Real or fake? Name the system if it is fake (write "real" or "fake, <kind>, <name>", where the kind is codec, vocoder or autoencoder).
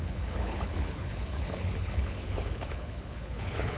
fake, codec, HILCodec